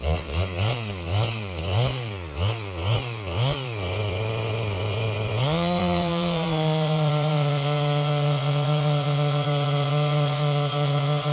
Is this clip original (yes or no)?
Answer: no